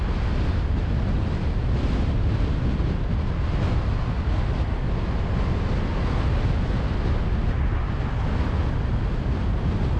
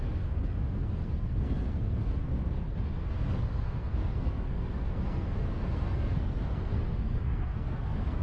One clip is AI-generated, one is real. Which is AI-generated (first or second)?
second